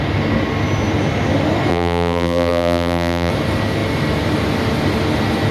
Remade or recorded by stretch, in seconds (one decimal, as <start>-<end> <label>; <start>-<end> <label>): 0.0-1.7 recorded; 1.7-3.3 remade; 3.3-5.5 recorded